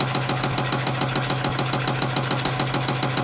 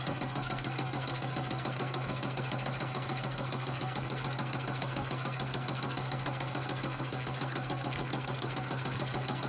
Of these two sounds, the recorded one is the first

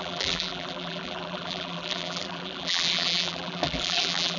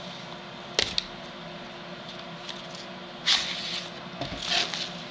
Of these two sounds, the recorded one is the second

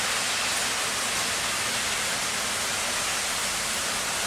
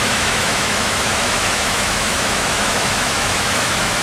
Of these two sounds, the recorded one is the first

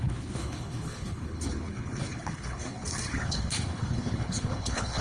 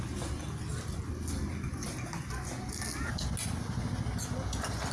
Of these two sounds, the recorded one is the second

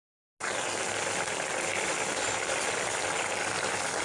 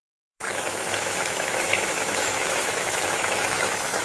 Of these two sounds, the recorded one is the first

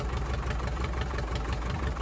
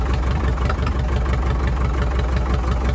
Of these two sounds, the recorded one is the second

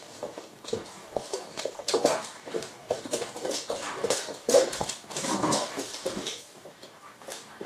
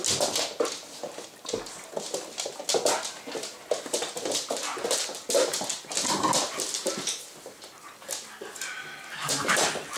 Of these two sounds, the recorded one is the second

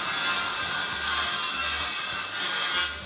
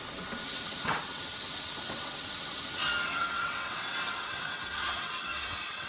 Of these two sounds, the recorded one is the first